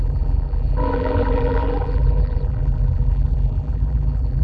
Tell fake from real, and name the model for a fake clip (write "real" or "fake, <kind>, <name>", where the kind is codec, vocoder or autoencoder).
fake, vocoder, BigVGAN v2